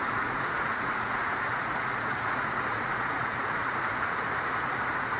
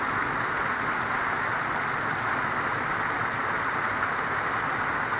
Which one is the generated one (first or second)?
first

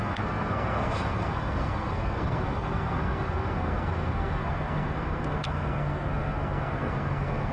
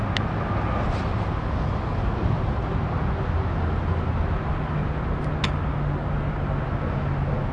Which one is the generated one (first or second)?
first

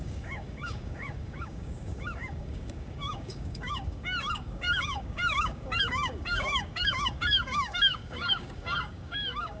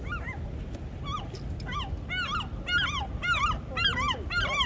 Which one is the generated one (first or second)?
first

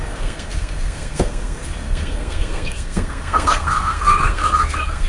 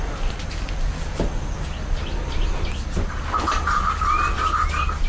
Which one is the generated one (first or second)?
first